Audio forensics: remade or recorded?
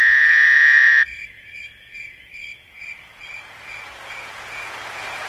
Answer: remade